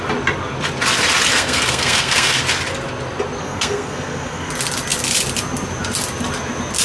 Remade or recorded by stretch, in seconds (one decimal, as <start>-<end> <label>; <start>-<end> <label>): 0.0-1.3 recorded; 1.3-2.4 remade; 2.4-3.4 recorded; 3.4-4.5 remade; 4.5-6.8 recorded